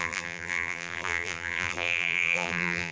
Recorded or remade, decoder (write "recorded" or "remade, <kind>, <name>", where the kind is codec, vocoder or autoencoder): remade, vocoder, BigVGAN v2